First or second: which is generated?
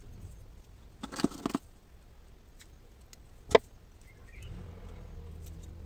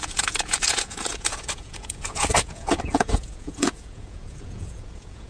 second